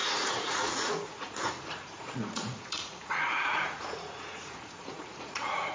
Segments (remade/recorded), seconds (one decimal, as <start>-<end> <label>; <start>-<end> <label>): 0.0-5.7 remade